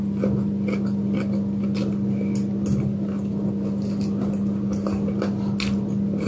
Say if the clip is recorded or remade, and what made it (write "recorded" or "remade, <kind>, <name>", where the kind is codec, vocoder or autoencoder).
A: recorded